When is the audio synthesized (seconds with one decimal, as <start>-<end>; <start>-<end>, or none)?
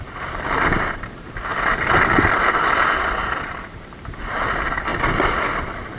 none